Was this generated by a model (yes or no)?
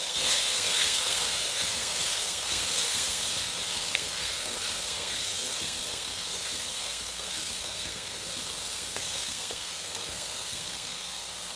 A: yes